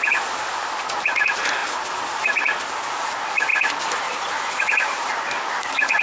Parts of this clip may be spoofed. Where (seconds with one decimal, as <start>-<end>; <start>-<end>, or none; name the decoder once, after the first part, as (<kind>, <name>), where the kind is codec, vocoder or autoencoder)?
1.6-2.2 (vocoder, BigVGAN v2); 3.5-4.6